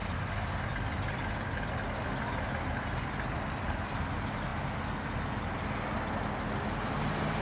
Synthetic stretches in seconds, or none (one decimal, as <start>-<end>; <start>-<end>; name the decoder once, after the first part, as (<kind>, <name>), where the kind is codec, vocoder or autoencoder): none